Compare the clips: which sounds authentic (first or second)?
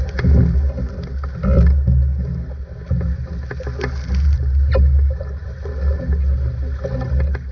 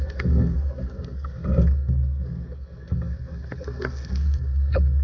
first